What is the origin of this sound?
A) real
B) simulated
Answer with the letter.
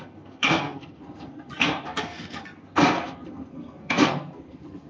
B